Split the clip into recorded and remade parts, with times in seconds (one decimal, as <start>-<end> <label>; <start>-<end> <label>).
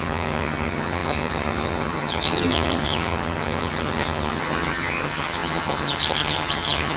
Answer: 0.0-7.0 remade